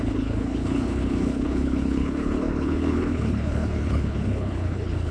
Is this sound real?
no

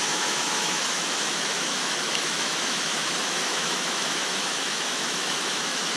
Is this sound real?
no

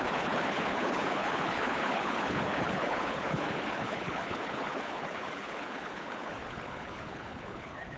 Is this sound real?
no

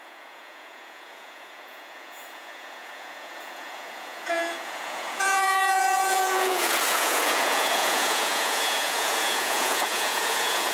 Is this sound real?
no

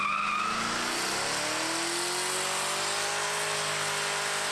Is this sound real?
yes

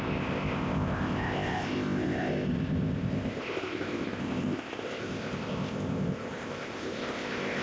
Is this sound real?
no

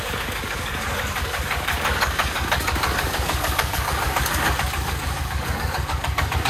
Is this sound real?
no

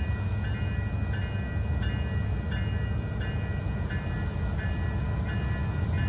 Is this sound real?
yes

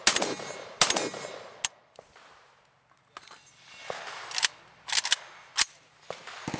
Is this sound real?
yes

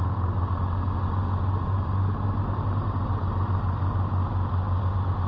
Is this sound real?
yes